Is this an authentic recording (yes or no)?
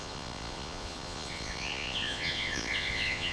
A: no